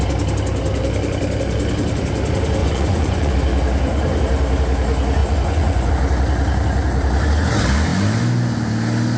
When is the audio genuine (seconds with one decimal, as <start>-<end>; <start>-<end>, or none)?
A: 0.0-2.6; 3.3-5.2; 5.9-9.2